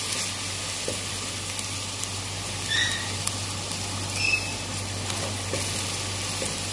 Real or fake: real